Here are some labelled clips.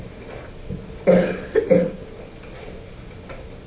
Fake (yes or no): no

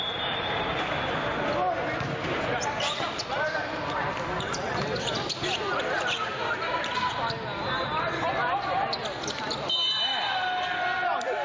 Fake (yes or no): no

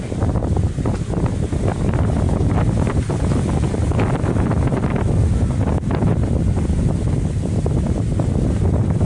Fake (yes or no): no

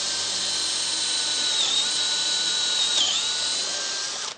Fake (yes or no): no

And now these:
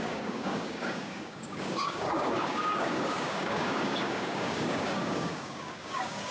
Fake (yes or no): yes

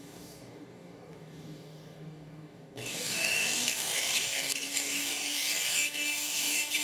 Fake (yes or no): yes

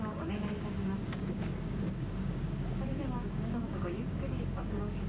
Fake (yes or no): yes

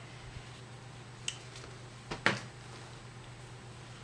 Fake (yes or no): no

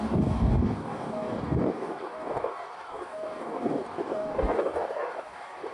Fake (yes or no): yes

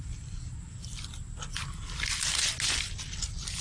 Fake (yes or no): no